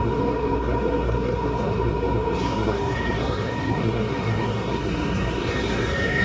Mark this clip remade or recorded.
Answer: remade